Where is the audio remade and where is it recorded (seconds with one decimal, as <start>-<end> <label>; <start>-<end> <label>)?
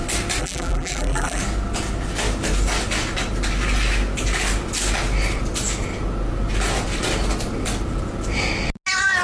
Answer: 0.0-0.4 recorded; 0.4-1.4 remade; 1.4-9.2 recorded